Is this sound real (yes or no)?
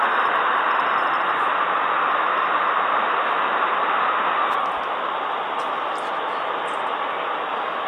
yes